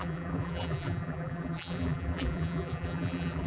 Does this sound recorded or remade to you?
remade